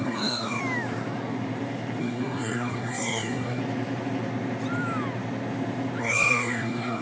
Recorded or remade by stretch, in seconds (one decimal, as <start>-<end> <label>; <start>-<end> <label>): 0.0-0.6 remade; 0.6-2.0 recorded; 2.0-3.6 remade; 3.6-6.0 recorded; 6.0-7.0 remade